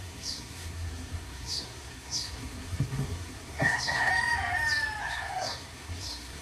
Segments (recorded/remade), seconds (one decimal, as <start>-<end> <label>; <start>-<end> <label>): 0.0-4.1 remade; 4.1-5.0 recorded; 5.0-6.4 remade